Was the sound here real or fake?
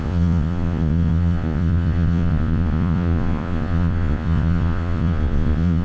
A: fake